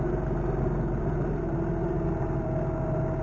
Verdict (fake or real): real